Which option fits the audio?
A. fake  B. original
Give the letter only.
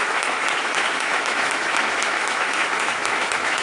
A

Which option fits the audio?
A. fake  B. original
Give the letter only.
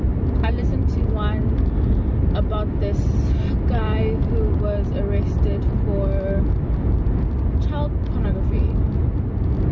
B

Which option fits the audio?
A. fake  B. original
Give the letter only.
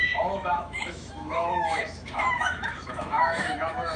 A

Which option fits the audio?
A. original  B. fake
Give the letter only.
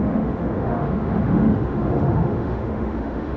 B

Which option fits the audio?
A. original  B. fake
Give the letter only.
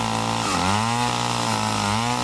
A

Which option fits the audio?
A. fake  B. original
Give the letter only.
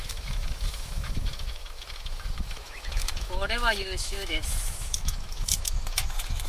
A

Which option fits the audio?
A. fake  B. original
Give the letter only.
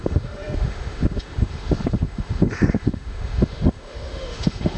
A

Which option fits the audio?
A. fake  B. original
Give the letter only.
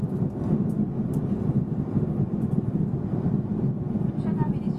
B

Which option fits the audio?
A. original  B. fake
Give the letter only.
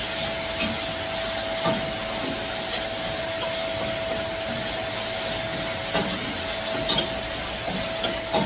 A